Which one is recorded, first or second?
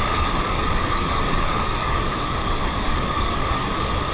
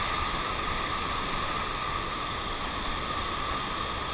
second